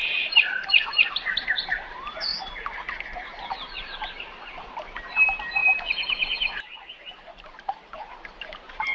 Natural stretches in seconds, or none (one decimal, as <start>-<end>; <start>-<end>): 0.0-8.9

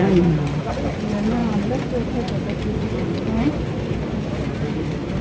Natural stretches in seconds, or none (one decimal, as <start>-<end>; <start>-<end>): 0.0-5.2